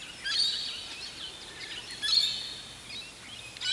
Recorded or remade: recorded